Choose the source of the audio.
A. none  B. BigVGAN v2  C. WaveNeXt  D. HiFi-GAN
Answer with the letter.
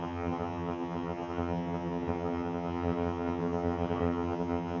D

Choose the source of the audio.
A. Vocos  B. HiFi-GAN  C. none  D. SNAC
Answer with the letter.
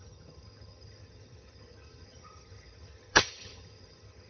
B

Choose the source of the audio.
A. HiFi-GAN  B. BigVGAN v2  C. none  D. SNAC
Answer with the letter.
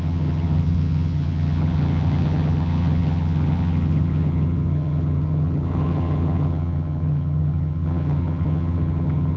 A